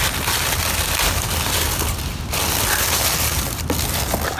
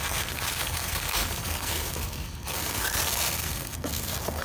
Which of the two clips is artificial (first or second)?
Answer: second